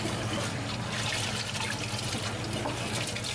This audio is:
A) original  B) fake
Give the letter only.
A